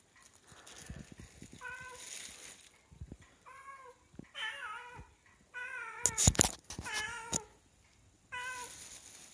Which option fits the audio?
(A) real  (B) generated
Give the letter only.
A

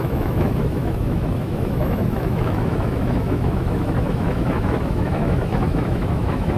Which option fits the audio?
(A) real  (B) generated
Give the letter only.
B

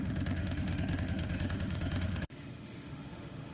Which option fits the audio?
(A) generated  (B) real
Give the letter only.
A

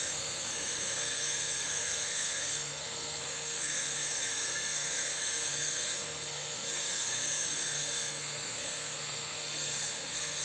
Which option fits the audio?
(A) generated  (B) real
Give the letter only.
A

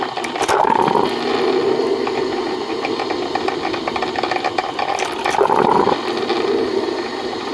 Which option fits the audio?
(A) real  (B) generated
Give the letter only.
A